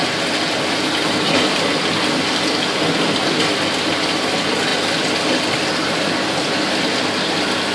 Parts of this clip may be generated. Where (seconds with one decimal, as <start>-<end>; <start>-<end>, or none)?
none